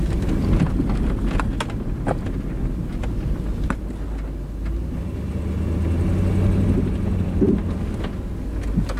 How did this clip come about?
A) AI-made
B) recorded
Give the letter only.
B